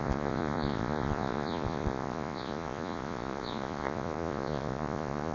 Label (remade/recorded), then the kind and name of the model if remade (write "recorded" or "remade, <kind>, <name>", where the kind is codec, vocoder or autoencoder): remade, vocoder, Vocos